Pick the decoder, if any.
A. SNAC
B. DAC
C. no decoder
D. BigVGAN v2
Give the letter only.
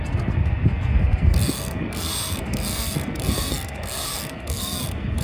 A